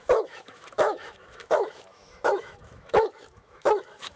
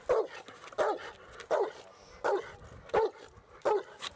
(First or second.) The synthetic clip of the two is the first